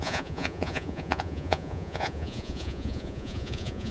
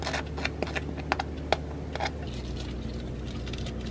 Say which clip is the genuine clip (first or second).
second